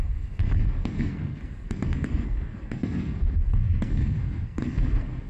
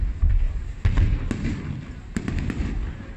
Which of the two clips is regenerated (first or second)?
first